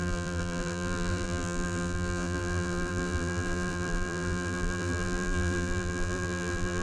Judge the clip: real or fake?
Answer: fake